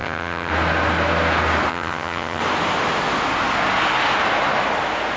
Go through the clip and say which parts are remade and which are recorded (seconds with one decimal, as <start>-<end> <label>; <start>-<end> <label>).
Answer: 0.0-0.5 remade; 0.5-1.7 recorded; 1.7-2.4 remade; 2.4-5.2 recorded